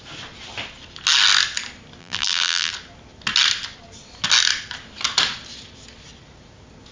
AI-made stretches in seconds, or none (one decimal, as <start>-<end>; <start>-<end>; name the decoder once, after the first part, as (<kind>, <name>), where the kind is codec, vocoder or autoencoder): 2.0-2.7 (vocoder, BigVGAN v2)